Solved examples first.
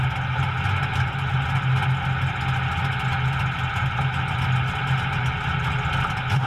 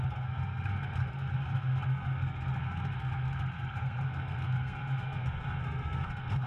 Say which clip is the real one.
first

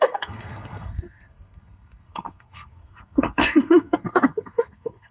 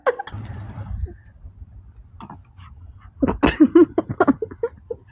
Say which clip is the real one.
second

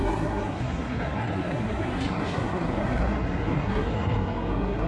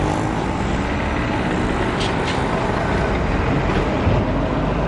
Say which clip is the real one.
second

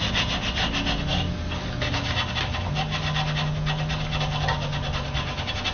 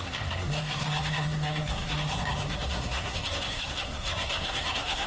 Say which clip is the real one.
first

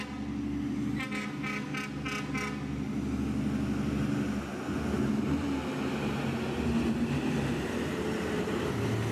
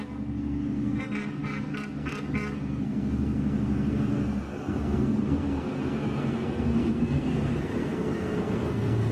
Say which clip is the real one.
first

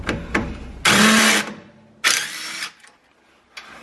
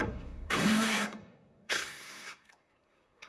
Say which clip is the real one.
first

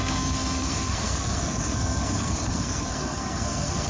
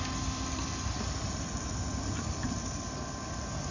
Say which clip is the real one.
second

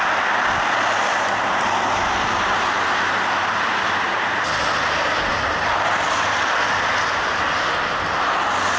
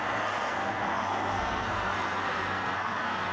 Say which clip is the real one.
first